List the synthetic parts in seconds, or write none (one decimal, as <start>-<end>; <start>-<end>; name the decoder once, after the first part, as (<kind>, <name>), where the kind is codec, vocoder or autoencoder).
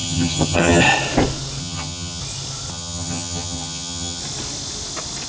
0.0-0.8 (vocoder, HiFi-GAN); 1.6-2.2; 2.7-4.2